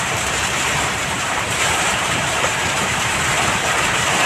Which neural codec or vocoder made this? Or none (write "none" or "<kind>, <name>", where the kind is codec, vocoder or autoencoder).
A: vocoder, BigVGAN v2